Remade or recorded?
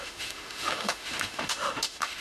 remade